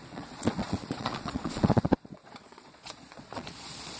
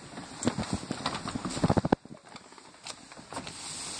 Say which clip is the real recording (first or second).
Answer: second